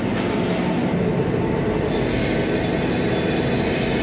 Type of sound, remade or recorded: recorded